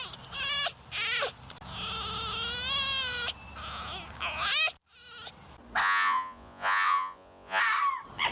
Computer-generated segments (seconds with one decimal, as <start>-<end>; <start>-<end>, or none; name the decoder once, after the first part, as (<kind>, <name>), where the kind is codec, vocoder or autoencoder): 5.8-7.6 (vocoder, Vocos)

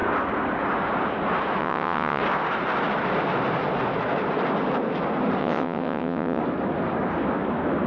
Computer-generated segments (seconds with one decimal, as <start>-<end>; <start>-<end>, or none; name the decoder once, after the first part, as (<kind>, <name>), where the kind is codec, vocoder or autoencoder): 1.6-2.2 (vocoder, WaveNeXt); 5.4-6.4

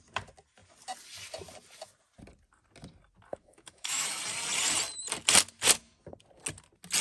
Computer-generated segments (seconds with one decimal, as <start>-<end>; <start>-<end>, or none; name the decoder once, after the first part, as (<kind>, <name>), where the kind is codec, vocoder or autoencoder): 3.3-4.2 (autoencoder, DAC-VAE)